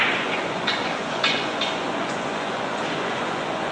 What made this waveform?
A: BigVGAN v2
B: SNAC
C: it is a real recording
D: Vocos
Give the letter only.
D